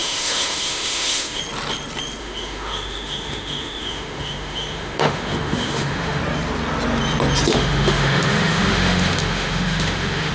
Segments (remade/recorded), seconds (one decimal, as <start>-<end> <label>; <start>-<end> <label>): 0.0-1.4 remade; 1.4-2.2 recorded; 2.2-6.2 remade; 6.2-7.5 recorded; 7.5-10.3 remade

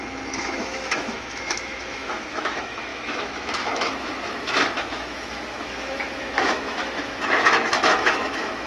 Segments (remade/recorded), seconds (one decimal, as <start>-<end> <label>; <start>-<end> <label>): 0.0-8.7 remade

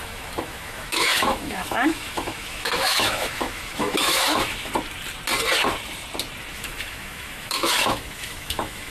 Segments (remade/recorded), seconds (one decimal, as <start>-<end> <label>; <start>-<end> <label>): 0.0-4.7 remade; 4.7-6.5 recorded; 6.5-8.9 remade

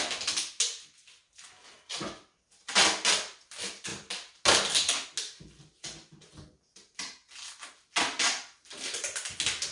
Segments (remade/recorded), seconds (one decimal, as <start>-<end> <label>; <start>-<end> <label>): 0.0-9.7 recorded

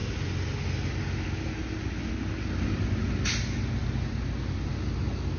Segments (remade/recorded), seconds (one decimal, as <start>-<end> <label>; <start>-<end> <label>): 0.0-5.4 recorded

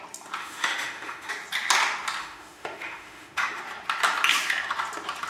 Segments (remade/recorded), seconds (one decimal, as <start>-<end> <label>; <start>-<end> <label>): 0.0-0.4 recorded; 0.4-1.3 remade; 1.3-2.2 recorded; 2.2-3.6 remade; 3.6-5.3 recorded

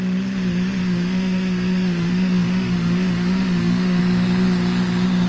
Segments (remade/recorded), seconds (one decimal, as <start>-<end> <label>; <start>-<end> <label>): 0.0-0.8 recorded; 0.8-4.0 remade; 4.0-5.3 recorded

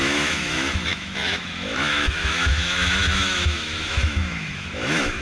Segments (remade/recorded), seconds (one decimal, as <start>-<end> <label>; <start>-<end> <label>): 0.0-5.2 remade